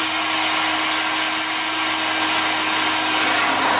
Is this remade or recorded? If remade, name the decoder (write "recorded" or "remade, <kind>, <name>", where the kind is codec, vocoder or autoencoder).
recorded